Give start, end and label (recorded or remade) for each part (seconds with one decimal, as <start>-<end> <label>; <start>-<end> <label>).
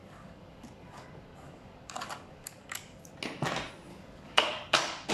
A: 0.0-3.1 remade; 3.1-3.9 recorded; 3.9-5.1 remade